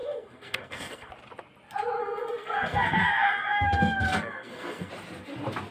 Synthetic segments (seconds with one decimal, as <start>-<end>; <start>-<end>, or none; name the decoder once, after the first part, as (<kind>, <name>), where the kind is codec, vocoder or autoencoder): 0.0-1.1 (codec, SNAC); 2.0-4.9